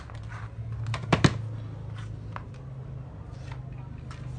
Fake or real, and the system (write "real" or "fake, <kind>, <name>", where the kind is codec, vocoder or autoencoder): real